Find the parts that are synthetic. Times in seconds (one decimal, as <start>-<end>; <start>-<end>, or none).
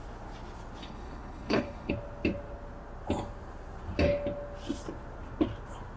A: 0.8-1.9